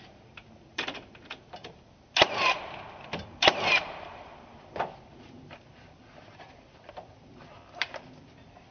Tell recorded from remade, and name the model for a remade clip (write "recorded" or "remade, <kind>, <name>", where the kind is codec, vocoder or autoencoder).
remade, vocoder, BigVGAN v2